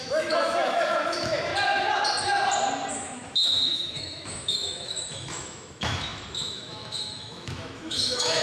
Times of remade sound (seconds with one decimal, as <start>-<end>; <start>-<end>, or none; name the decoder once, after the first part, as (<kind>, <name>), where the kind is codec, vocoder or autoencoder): 0.0-1.5 (autoencoder, DAC-VAE); 2.9-8.4